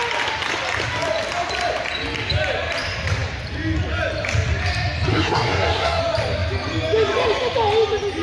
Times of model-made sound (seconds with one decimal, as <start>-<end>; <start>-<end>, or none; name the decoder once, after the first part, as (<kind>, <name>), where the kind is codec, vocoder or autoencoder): 5.1-6.0 (codec, SNAC)